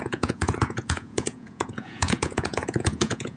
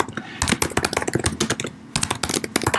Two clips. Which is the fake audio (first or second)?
first